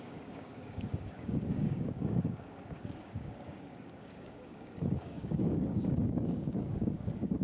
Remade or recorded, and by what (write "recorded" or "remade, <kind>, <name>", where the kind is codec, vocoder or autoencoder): remade, codec, DAC